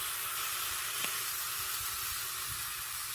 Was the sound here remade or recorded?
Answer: recorded